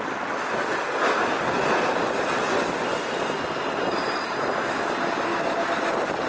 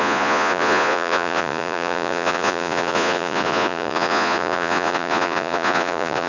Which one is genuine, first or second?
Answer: first